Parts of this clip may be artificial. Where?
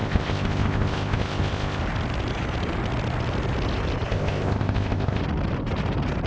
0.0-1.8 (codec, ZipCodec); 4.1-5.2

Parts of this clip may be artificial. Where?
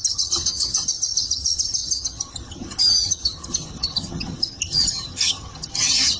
0.0-6.2 (vocoder, HiFi-GAN)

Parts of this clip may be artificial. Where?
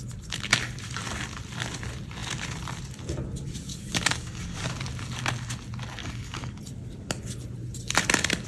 3.7-4.7 (codec, DAC); 6.0-6.6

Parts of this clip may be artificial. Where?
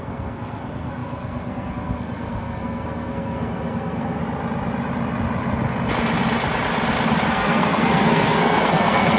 0.0-4.2 (codec, SNAC); 7.3-9.2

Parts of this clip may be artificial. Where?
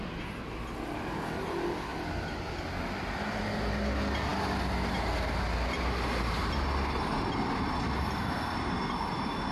none